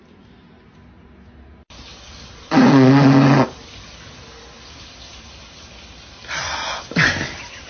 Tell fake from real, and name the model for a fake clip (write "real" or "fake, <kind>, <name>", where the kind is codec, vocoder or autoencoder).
real